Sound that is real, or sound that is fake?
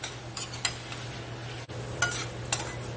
real